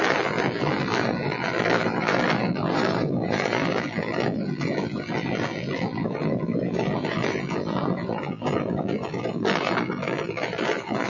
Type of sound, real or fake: fake